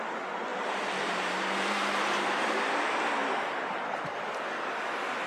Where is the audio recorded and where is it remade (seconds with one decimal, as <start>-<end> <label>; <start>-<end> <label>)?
0.0-0.5 recorded; 0.5-2.8 remade; 2.8-3.2 recorded; 3.2-4.2 remade; 4.2-5.3 recorded